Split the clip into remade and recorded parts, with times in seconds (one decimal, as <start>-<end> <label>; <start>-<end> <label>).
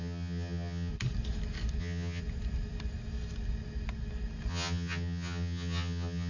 0.0-0.9 remade; 0.9-1.8 recorded; 1.8-2.2 remade; 2.2-4.5 recorded; 4.5-6.3 remade